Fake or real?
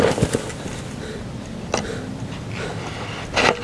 real